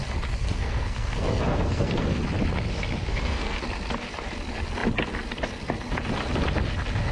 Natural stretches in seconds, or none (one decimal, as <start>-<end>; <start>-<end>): 0.0-0.4; 2.2-3.1; 3.6-7.1